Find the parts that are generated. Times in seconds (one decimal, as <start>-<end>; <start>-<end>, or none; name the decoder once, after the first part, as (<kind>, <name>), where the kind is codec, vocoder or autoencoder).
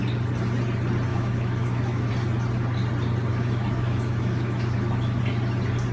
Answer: 1.1-2.1 (autoencoder, DAC-VAE); 3.3-5.2